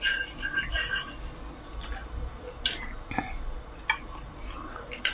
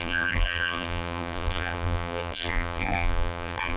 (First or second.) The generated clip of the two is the second